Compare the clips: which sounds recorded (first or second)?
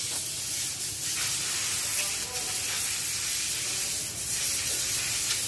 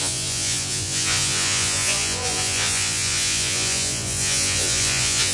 first